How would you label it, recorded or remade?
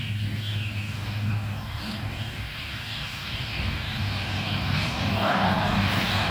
remade